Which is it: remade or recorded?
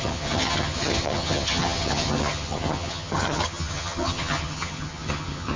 remade